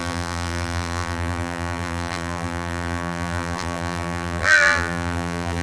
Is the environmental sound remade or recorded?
remade